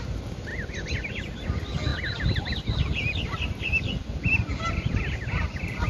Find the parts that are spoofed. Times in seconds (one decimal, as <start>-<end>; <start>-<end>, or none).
none